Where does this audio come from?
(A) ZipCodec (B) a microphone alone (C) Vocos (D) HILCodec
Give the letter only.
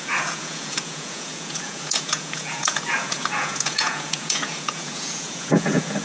C